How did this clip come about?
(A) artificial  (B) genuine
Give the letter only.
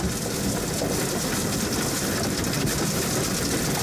B